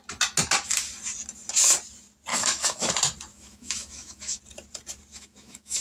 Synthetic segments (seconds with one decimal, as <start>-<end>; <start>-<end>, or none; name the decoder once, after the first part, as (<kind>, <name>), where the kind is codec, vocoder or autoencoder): 2.3-2.9 (autoencoder, DAC-VAE); 3.3-4.4; 5.1-5.8